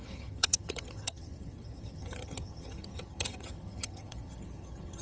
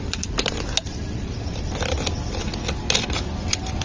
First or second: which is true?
second